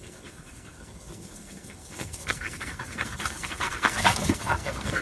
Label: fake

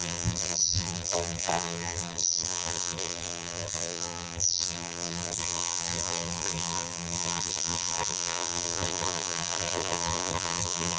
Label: fake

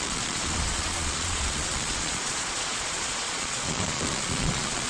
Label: fake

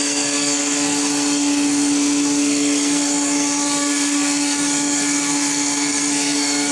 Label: fake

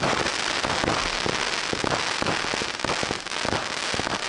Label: real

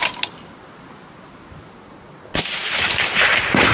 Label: real